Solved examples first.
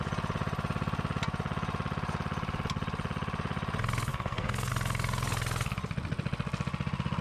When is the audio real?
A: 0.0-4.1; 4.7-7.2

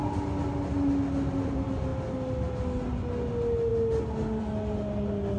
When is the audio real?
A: 0.0-5.4